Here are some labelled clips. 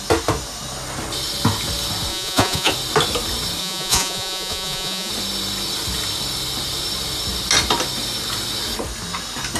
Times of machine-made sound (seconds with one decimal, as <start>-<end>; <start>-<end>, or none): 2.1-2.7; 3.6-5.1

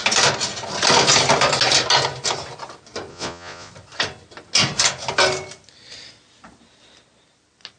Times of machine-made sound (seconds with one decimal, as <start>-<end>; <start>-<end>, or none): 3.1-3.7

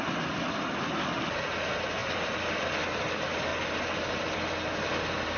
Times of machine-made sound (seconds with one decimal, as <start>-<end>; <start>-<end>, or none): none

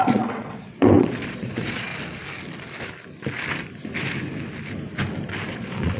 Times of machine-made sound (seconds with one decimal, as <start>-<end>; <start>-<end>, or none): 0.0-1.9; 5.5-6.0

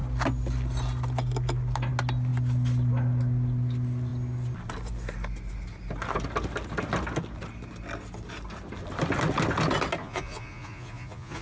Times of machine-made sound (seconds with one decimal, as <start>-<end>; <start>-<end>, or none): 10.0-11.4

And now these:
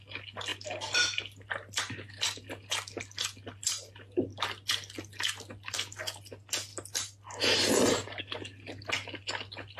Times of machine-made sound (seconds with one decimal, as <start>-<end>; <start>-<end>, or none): none